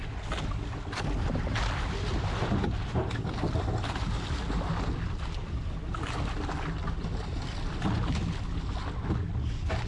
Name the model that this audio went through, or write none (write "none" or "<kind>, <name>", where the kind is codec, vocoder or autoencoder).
none